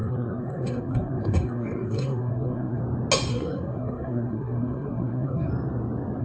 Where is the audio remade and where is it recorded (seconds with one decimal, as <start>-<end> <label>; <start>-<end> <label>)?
0.0-2.8 remade; 2.8-3.3 recorded; 3.3-5.5 remade; 5.5-6.2 recorded